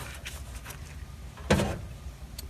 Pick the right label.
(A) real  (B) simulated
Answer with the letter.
A